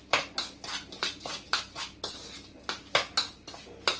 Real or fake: real